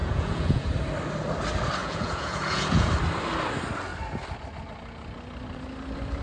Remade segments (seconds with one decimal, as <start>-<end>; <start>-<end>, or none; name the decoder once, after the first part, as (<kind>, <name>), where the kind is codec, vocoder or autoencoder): 0.0-0.7 (vocoder, Vocos); 1.8-2.9